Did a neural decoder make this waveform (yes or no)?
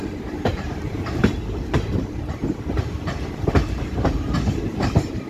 yes